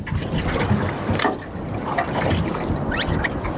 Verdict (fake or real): real